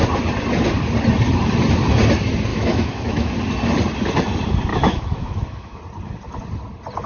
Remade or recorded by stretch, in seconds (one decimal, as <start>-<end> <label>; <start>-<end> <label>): 0.0-2.5 recorded; 2.5-3.3 remade; 3.3-4.7 recorded; 4.7-5.8 remade; 5.8-7.1 recorded